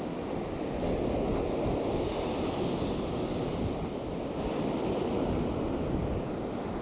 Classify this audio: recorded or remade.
recorded